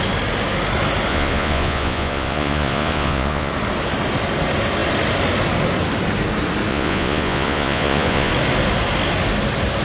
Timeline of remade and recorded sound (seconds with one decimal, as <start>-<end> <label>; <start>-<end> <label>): 0.0-1.1 recorded; 1.1-3.5 remade; 3.5-6.7 recorded; 6.7-8.3 remade; 8.3-9.8 recorded